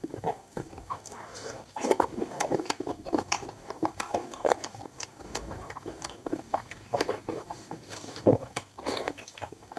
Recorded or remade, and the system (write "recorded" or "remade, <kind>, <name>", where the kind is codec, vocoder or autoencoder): remade, codec, DAC